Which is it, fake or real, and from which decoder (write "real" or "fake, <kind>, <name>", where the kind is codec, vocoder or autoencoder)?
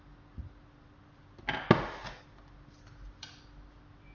real